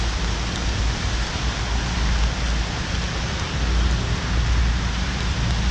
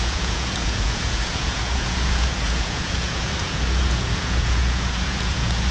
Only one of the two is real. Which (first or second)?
first